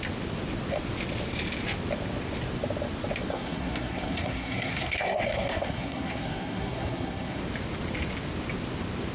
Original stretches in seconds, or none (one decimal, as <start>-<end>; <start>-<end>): 0.0-3.3; 7.4-9.1